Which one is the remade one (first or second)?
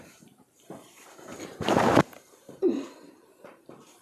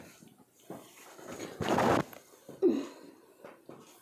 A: first